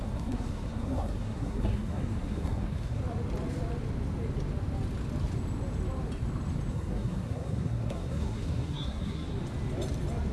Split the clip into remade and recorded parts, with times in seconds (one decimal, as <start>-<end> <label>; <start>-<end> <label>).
0.0-3.0 remade; 3.0-6.7 recorded; 6.7-9.4 remade; 9.4-10.3 recorded